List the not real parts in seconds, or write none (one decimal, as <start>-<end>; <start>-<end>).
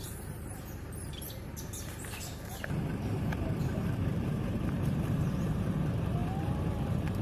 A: 0.0-7.2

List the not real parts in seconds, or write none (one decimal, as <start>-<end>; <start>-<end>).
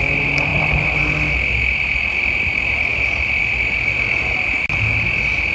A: 0.5-1.0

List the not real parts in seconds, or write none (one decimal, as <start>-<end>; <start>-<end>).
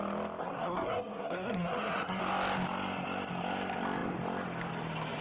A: 0.4-2.2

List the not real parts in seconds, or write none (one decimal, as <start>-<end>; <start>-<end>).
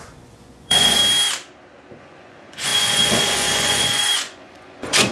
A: 0.0-1.0; 2.0-5.1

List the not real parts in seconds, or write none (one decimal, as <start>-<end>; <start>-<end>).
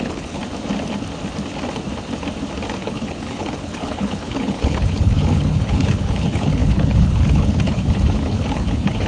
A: 0.0-0.4; 2.8-9.1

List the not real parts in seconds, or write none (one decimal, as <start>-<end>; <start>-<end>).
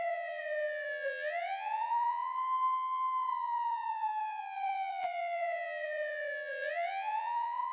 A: 0.0-7.7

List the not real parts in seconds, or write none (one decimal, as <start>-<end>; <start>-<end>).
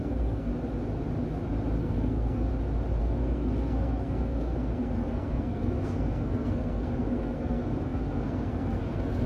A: 0.0-0.5; 1.8-2.5; 3.0-9.3